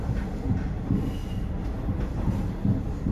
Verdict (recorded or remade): recorded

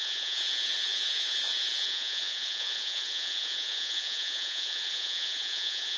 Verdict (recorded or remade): remade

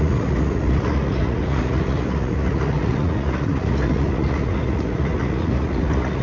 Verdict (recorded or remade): remade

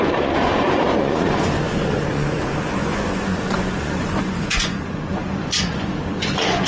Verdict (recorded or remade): remade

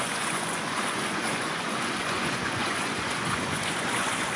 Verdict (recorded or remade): remade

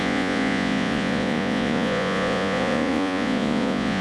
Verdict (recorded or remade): remade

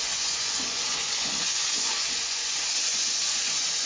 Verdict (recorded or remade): remade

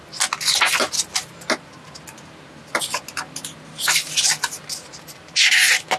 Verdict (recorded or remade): recorded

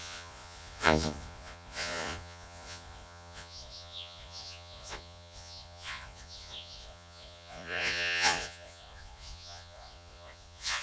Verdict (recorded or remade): remade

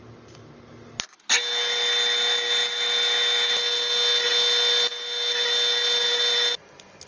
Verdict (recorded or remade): recorded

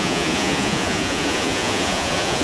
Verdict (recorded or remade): remade